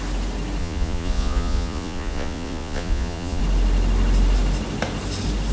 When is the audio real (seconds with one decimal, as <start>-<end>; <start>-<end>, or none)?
0.0-0.6; 3.4-5.5